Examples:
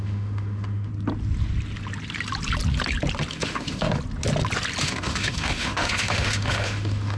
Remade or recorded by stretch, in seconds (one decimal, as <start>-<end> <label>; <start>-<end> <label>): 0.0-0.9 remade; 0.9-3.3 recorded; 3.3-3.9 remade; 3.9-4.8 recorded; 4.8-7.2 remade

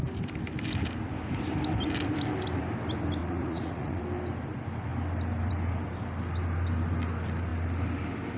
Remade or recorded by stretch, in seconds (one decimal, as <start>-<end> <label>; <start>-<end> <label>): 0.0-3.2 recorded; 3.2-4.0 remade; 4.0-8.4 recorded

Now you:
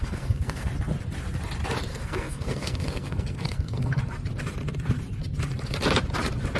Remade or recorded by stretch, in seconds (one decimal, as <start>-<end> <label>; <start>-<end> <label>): 0.0-0.7 remade; 0.7-1.9 recorded; 1.9-4.0 remade; 4.0-6.6 recorded